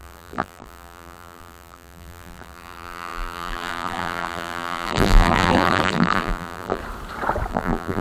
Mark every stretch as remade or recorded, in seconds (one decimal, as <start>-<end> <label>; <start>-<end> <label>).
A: 0.0-6.8 remade; 6.8-7.5 recorded; 7.5-8.0 remade